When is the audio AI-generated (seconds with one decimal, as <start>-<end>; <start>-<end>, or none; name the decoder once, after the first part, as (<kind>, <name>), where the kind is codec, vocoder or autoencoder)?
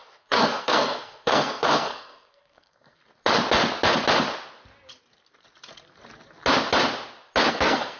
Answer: 0.0-3.0 (codec, SNAC); 7.5-8.0